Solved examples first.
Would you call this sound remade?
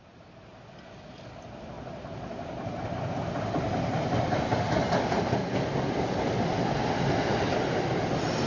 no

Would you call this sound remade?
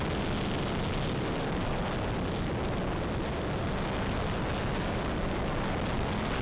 no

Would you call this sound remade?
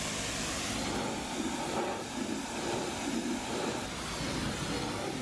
no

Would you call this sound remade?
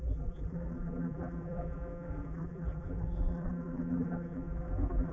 yes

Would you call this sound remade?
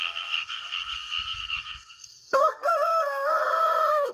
yes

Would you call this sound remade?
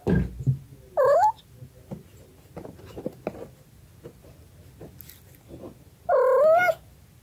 no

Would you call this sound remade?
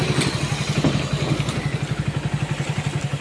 no